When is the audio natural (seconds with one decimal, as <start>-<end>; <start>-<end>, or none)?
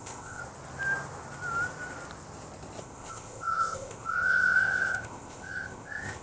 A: 0.4-2.8